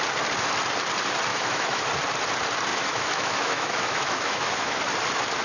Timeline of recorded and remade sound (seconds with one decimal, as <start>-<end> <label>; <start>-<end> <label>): 0.0-1.3 recorded; 1.3-1.8 remade; 1.8-2.7 recorded; 2.7-4.8 remade; 4.8-5.4 recorded